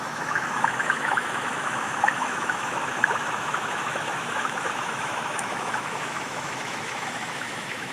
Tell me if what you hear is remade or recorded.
remade